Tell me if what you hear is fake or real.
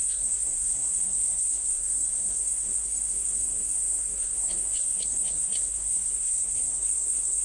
fake